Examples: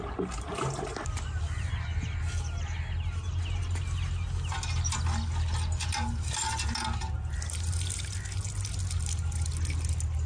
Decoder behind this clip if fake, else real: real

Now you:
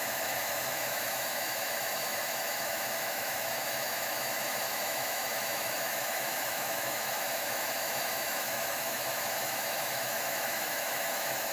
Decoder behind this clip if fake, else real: fake, autoencoder, DAC-VAE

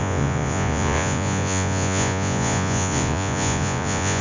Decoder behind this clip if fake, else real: fake, vocoder, Vocos